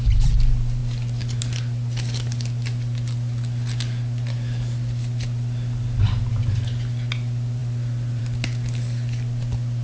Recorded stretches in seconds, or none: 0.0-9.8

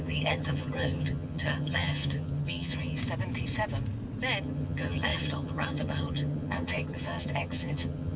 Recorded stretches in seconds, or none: 3.0-4.4

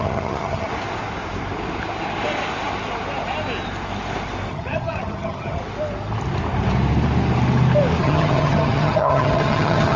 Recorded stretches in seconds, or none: 0.7-4.5; 5.6-8.0